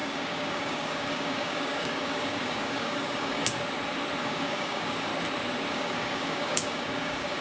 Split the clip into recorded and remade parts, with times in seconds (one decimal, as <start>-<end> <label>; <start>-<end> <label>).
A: 0.0-3.4 remade; 3.4-4.2 recorded; 4.2-5.1 remade; 5.1-5.7 recorded; 5.7-7.4 remade